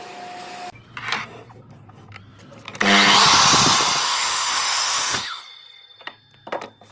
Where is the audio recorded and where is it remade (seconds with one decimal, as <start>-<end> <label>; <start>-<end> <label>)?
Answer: 0.0-4.0 recorded; 4.0-5.4 remade; 5.4-6.9 recorded